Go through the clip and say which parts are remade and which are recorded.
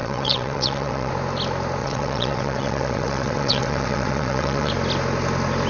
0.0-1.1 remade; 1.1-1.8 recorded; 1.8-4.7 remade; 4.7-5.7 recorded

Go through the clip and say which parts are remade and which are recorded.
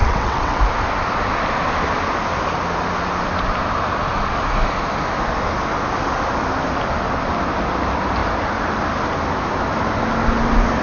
0.0-0.6 remade; 0.6-10.8 recorded